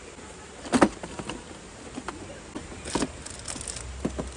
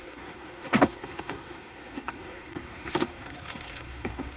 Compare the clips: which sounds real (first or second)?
first